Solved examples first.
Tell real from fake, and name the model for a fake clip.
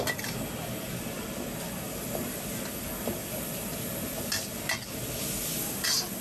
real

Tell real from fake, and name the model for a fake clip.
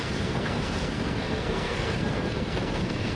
fake, codec, SNAC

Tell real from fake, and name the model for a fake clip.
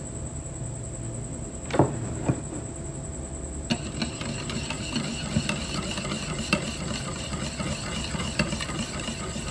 real